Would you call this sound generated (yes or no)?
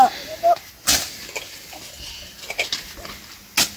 no